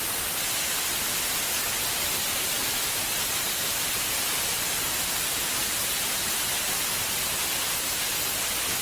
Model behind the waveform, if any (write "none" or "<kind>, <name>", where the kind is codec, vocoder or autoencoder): none